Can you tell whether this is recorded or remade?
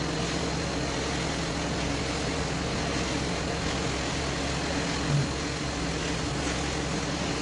recorded